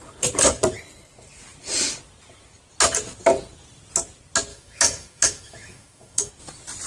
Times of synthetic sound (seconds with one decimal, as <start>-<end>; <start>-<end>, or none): 4.5-6.3